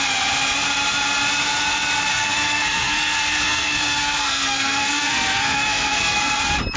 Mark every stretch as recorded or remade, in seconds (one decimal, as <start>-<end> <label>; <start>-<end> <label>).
0.0-2.1 recorded; 2.1-6.2 remade; 6.2-6.8 recorded

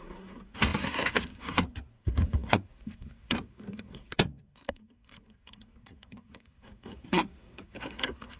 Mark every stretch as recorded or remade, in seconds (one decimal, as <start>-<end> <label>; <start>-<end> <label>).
0.0-8.4 remade

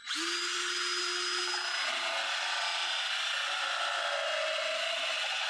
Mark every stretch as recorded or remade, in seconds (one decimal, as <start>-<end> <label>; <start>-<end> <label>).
0.0-5.5 recorded

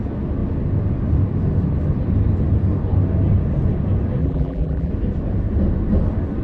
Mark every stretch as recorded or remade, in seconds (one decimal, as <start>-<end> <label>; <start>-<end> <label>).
0.0-4.2 recorded; 4.2-4.9 remade; 4.9-6.4 recorded